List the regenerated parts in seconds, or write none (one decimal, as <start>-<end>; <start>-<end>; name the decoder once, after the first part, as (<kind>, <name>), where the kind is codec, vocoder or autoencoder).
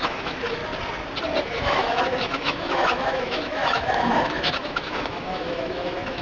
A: 0.0-0.6 (autoencoder, DAC-VAE); 1.4-6.2